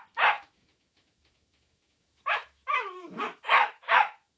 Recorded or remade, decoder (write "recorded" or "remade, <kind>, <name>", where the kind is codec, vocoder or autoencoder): remade, autoencoder, DAC-VAE